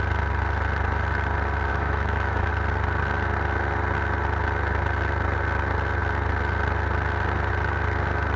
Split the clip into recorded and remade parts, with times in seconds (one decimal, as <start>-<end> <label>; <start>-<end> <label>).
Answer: 0.0-1.7 recorded; 1.7-2.5 remade; 2.5-8.4 recorded